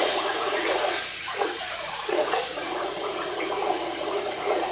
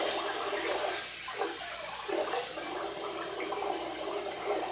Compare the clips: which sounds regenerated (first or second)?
first